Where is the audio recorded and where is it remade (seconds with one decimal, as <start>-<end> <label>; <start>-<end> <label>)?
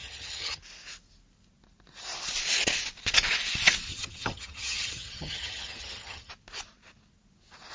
0.0-0.6 remade; 0.6-3.9 recorded; 3.9-6.3 remade; 6.3-7.7 recorded